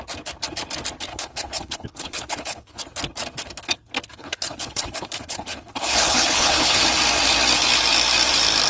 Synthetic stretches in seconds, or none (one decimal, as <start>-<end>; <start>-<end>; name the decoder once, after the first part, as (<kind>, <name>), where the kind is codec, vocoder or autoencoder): 1.1-2.8 (codec, HILCodec); 4.2-6.8